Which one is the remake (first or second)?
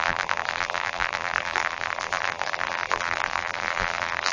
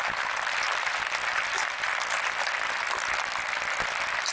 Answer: first